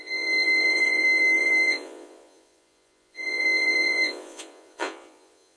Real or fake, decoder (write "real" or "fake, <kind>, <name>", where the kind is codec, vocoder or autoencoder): fake, vocoder, Vocos